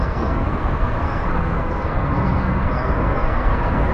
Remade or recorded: remade